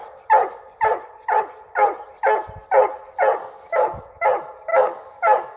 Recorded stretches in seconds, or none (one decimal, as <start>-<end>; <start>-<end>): 0.0-3.4; 4.0-4.7